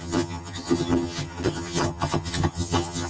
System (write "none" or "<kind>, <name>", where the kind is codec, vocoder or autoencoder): vocoder, HiFi-GAN